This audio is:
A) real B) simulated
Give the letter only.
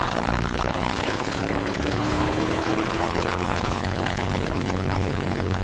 B